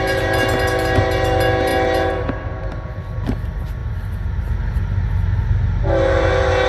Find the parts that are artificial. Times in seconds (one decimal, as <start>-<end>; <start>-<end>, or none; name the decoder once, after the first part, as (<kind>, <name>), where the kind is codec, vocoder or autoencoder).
none